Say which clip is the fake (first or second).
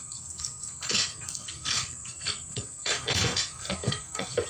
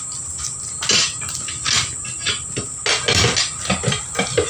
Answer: first